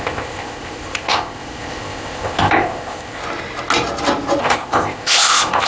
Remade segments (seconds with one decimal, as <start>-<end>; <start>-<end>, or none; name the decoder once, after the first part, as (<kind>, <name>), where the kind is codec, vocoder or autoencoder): 0.0-3.2 (codec, ZipCodec); 4.4-5.7